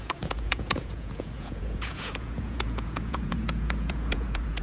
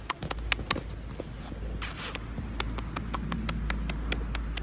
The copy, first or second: first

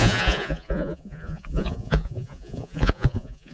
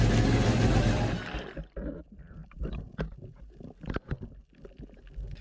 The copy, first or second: first